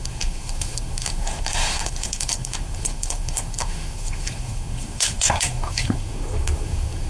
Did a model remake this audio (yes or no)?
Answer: yes